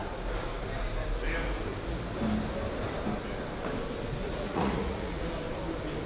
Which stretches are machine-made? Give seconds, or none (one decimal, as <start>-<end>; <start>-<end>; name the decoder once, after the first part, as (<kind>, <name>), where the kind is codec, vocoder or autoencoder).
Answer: 4.2-5.2 (vocoder, Vocos)